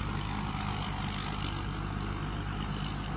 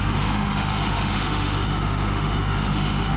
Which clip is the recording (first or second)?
first